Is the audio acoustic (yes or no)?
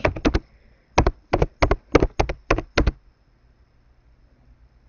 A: yes